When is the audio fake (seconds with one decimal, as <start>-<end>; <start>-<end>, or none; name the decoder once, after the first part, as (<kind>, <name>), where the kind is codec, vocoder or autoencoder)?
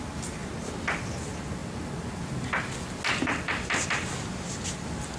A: none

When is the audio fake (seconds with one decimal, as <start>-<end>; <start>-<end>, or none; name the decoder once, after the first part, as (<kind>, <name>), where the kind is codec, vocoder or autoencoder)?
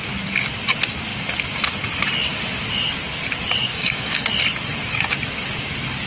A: 3.7-4.3 (codec, DAC)